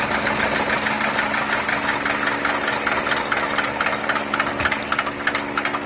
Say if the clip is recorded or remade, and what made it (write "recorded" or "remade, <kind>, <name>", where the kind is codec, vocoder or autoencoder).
recorded